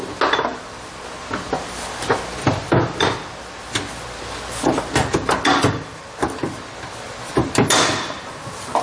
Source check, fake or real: real